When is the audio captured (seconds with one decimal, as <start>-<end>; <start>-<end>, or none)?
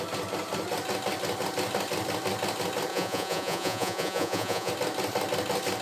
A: 0.0-2.9; 4.7-5.8